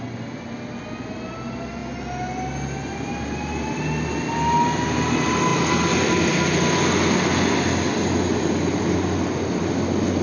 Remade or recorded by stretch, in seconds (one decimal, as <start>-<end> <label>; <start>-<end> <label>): 0.0-10.2 recorded